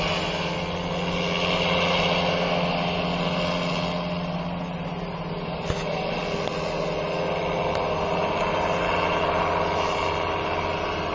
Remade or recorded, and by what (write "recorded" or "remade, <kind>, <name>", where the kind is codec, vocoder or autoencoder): recorded